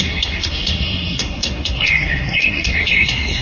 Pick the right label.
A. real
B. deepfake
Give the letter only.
B